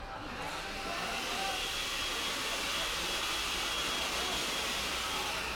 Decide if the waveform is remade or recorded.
recorded